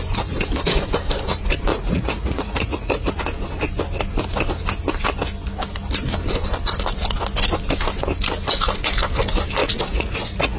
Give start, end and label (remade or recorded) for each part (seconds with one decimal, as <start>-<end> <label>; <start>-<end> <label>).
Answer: 0.0-1.7 recorded; 1.7-3.1 remade; 3.1-9.6 recorded; 9.6-10.6 remade